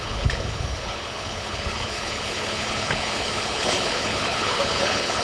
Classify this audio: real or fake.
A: fake